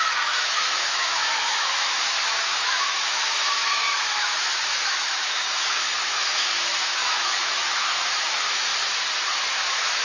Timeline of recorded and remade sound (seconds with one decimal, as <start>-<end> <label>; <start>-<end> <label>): 0.0-8.7 remade; 8.7-9.5 recorded; 9.5-10.0 remade